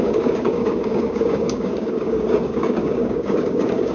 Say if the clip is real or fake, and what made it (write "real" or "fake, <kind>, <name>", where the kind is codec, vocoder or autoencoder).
fake, codec, DAC